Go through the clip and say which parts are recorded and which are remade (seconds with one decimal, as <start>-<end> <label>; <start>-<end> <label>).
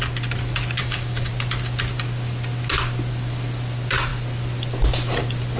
0.0-0.8 recorded; 0.8-1.3 remade; 1.3-5.6 recorded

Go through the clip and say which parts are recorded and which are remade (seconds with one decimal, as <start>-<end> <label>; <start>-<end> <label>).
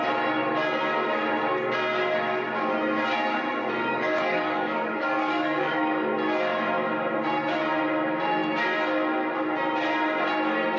0.0-3.8 recorded; 3.8-6.1 remade; 6.1-10.8 recorded